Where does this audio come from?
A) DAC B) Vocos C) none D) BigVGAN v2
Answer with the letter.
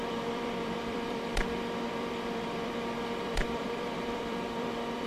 D